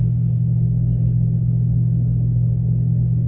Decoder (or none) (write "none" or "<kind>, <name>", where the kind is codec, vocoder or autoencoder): autoencoder, DAC-VAE